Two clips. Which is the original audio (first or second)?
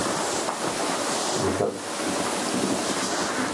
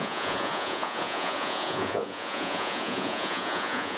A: first